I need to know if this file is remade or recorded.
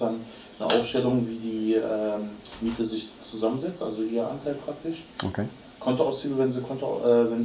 remade